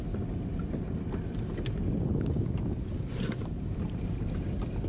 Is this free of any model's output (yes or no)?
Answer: yes